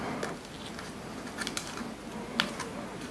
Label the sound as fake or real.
real